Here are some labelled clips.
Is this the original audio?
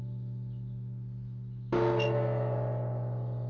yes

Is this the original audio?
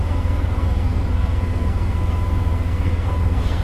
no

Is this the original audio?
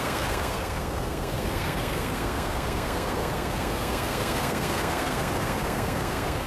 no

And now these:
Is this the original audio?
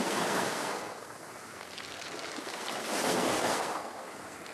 no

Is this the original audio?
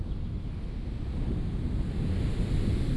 yes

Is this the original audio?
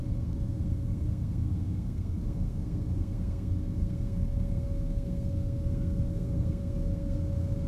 no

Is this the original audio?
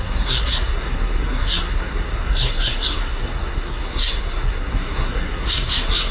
no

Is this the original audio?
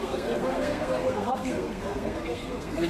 no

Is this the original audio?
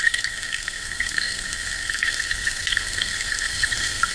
no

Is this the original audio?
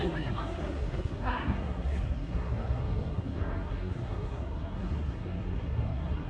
no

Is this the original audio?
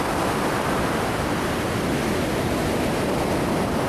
yes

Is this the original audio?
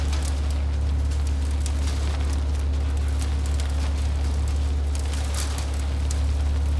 yes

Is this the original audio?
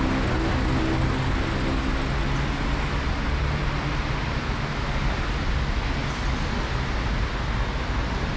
yes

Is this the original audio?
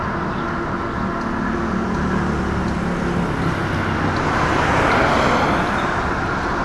yes